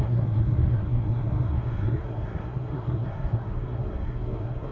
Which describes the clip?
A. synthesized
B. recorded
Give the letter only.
A